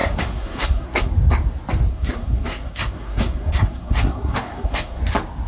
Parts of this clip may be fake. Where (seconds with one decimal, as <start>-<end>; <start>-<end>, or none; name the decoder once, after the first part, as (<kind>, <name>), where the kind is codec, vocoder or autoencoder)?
0.0-1.1 (codec, SNAC); 1.9-5.0